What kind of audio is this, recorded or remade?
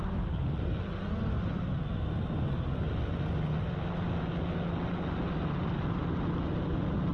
recorded